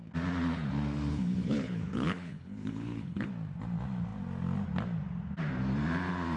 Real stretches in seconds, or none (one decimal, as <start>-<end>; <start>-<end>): 0.0-1.1; 3.3-6.4